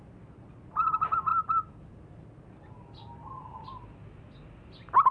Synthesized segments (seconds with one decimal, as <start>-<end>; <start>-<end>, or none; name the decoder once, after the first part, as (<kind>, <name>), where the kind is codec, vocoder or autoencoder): none